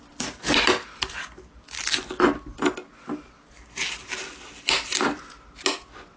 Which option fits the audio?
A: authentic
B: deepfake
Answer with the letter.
A